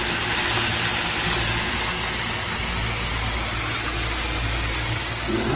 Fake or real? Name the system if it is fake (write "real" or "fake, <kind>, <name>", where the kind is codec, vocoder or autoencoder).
real